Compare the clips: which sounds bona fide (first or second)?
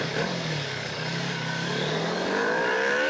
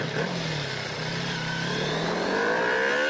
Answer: second